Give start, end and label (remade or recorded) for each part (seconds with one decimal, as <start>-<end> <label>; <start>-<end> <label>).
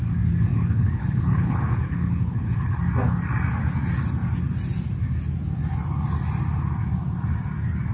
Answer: 0.0-0.5 recorded; 0.5-2.8 remade; 2.8-7.9 recorded